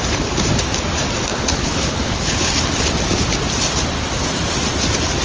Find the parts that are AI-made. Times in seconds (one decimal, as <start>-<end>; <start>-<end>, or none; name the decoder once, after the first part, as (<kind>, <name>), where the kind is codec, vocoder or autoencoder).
1.3-2.5 (codec, HILCodec)